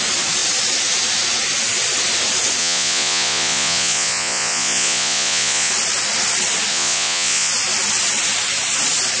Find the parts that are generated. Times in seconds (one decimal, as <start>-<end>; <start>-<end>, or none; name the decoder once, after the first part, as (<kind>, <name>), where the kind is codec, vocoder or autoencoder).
2.6-5.7 (vocoder, Vocos); 6.7-7.5